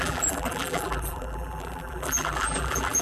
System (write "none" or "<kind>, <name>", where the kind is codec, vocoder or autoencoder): vocoder, BigVGAN v2